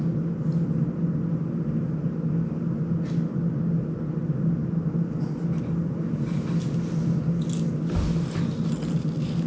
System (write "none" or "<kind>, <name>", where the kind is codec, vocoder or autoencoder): none